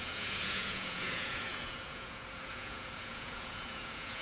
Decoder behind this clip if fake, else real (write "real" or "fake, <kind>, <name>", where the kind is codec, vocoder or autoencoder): fake, vocoder, Vocos